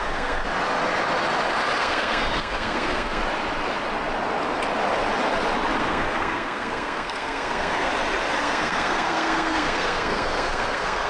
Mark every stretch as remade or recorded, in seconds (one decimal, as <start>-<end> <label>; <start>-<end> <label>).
0.0-0.4 remade; 0.4-1.8 recorded; 1.8-3.2 remade; 3.2-5.8 recorded; 5.8-7.9 remade; 7.9-8.4 recorded; 8.4-11.1 remade